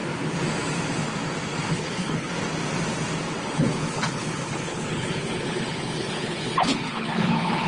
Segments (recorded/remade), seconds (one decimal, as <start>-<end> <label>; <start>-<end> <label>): 0.0-1.7 recorded; 1.7-2.3 remade; 2.3-3.6 recorded; 3.6-7.7 remade